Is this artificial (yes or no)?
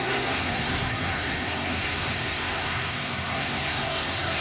yes